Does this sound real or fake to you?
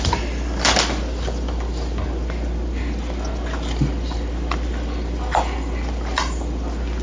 real